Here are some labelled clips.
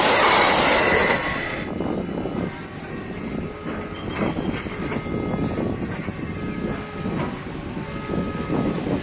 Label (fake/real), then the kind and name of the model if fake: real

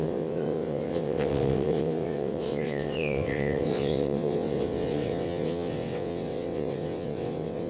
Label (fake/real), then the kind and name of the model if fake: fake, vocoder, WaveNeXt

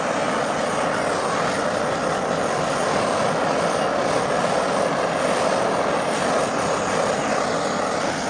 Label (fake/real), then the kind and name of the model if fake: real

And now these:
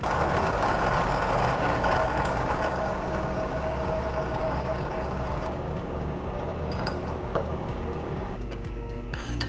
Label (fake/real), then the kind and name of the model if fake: fake, codec, DAC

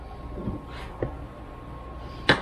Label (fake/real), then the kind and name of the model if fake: real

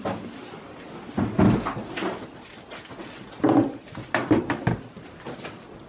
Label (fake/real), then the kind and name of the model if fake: real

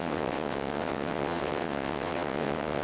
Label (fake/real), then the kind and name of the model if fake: fake, vocoder, WaveNeXt